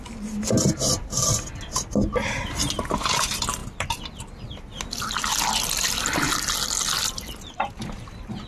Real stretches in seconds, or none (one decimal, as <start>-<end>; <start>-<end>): 0.0-8.5